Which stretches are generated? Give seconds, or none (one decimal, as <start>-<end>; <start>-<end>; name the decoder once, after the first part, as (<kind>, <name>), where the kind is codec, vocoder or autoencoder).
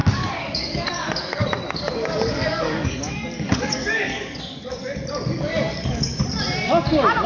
0.0-6.2 (codec, DAC)